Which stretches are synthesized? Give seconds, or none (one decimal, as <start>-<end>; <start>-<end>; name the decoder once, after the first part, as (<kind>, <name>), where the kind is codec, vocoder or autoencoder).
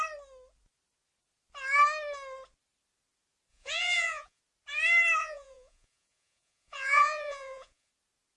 3.5-4.4 (vocoder, Vocos); 5.2-7.9